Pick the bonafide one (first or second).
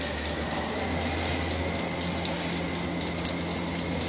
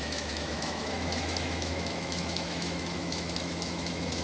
first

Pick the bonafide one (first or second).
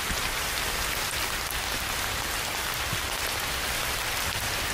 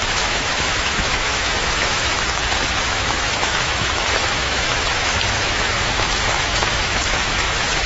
first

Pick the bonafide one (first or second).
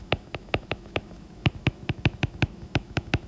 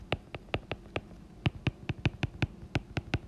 second